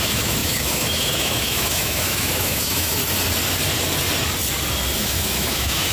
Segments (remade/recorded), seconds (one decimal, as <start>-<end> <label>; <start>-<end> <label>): 0.0-3.0 remade; 3.0-5.0 recorded; 5.0-5.9 remade